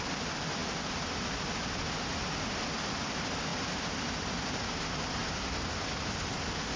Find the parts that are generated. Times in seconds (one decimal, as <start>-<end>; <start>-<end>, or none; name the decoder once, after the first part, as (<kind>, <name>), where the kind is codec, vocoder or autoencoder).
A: none